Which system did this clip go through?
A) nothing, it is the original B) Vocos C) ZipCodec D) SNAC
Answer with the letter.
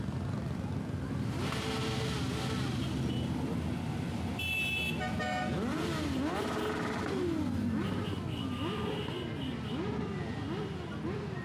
A